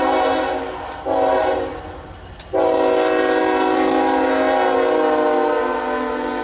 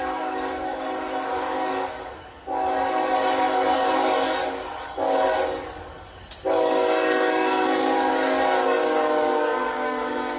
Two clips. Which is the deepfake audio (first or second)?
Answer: second